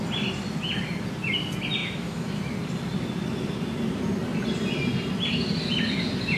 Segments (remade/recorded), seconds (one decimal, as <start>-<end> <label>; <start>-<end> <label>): 0.0-1.8 recorded; 1.8-2.4 remade; 2.4-6.4 recorded